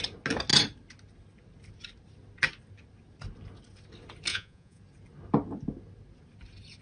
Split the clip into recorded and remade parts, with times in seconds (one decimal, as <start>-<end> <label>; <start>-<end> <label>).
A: 0.0-4.3 recorded; 4.3-4.8 remade; 4.8-6.8 recorded